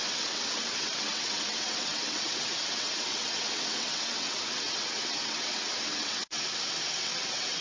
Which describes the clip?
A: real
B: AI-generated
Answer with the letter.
B